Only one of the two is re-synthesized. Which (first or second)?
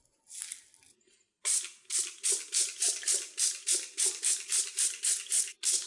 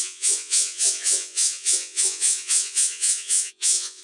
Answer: second